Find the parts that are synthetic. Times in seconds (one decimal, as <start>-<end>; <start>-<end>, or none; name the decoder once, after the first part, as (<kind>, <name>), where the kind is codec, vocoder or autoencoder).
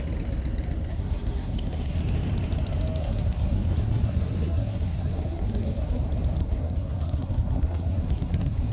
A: 0.9-2.0 (codec, SNAC); 3.0-6.0; 6.4-8.7